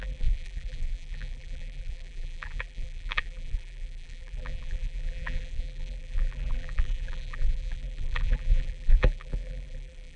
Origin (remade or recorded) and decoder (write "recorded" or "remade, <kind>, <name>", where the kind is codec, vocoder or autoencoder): remade, vocoder, BigVGAN v2